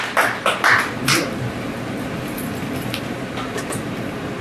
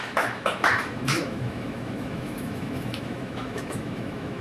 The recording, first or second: first